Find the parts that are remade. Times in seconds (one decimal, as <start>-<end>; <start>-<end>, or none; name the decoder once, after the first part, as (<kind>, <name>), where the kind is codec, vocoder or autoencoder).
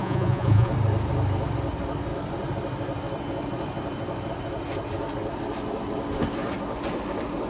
0.0-0.7 (vocoder, Vocos)